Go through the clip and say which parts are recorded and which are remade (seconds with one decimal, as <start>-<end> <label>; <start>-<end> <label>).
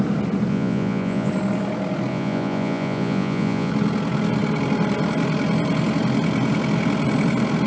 0.0-0.5 recorded; 0.5-1.3 remade; 1.3-2.1 recorded; 2.1-3.7 remade; 3.7-7.7 recorded